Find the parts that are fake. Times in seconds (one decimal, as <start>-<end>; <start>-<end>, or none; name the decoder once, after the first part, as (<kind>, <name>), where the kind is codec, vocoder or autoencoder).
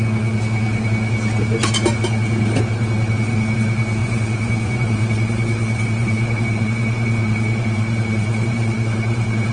4.0-9.5 (vocoder, Vocos)